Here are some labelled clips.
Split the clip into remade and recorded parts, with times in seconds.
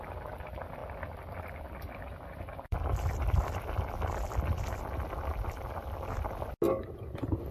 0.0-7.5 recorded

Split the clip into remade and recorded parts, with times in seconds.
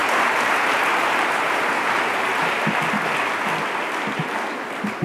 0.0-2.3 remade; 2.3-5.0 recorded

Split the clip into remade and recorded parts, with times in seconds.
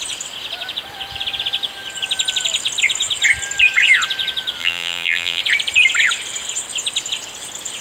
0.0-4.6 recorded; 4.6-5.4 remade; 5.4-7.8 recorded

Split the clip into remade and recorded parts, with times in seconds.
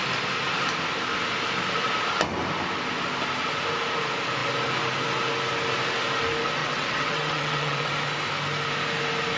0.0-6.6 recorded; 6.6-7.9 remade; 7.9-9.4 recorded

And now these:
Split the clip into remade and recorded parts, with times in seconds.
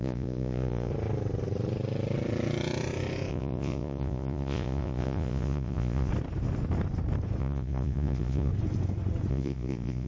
0.0-0.9 remade; 0.9-3.3 recorded; 3.3-6.1 remade; 6.1-7.4 recorded; 7.4-8.5 remade; 8.5-9.3 recorded; 9.3-10.1 remade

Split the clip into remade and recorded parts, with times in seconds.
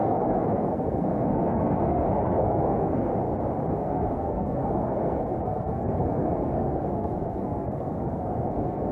0.0-3.1 remade; 3.1-3.7 recorded; 3.7-8.9 remade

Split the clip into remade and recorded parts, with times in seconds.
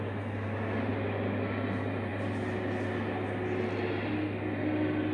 0.0-5.1 recorded